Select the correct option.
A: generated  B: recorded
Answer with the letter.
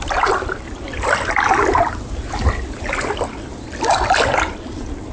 B